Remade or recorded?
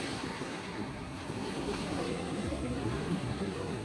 remade